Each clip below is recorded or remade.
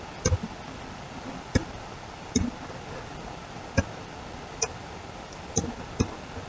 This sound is recorded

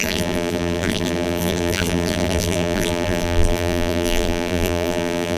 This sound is remade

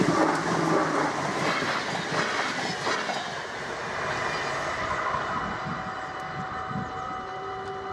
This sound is recorded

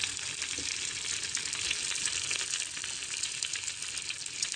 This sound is recorded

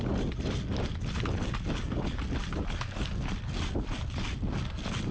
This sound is recorded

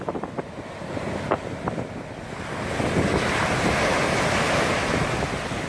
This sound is recorded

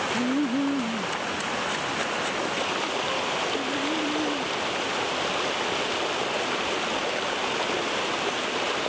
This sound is recorded